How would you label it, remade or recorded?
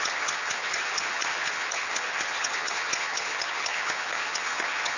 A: remade